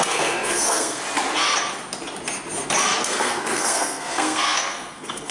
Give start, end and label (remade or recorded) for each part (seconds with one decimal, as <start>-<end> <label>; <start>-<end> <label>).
0.0-1.0 remade; 1.0-3.0 recorded; 3.0-5.3 remade